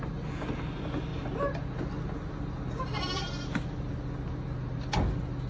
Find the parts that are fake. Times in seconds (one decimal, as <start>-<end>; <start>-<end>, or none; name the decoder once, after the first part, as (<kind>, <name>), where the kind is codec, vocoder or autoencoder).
none